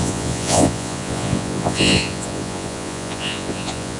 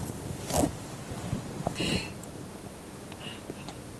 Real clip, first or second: second